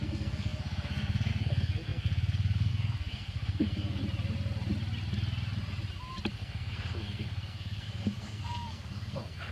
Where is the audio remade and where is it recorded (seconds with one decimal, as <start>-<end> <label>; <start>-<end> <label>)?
0.0-4.0 remade; 4.0-6.3 recorded; 6.3-9.5 remade